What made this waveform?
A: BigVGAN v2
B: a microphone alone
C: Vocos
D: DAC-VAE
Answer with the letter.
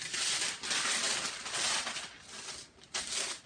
B